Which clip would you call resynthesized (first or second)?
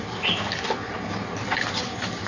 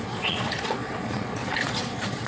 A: second